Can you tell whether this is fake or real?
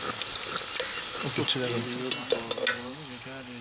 real